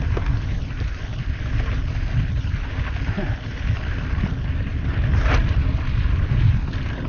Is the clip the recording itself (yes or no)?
yes